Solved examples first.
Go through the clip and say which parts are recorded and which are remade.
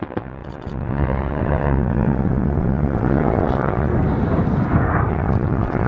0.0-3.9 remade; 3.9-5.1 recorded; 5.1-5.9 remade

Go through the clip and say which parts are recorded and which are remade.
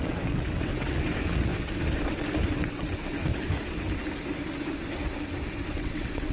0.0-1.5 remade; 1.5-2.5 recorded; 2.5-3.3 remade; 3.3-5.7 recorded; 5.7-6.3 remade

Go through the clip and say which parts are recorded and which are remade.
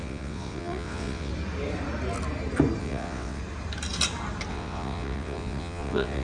0.0-1.3 remade; 1.3-2.8 recorded; 2.8-3.4 remade; 3.4-4.5 recorded; 4.5-6.2 remade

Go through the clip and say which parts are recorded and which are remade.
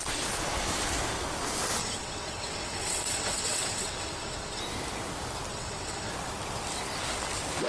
0.0-1.8 recorded; 1.8-4.6 remade; 4.6-5.5 recorded; 5.5-6.1 remade; 6.1-7.7 recorded